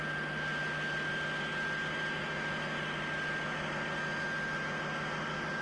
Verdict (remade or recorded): recorded